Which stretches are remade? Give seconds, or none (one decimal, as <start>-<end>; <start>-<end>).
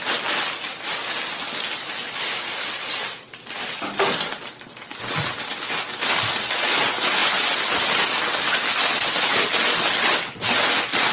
none